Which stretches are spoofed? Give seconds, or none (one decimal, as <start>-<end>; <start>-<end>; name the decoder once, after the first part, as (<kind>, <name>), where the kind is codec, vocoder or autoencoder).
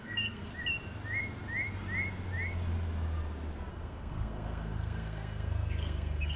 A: 0.0-0.5 (codec, SNAC); 3.7-6.4